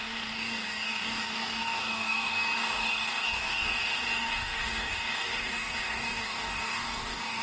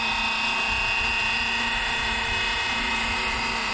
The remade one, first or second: first